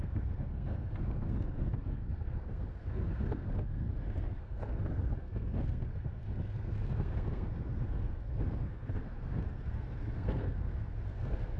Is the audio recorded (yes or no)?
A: no